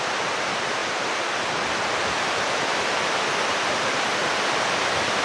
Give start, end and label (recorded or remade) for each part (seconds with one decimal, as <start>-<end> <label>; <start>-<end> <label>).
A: 0.0-0.8 remade; 0.8-3.7 recorded; 3.7-5.2 remade